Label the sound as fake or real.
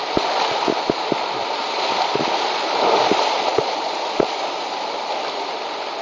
real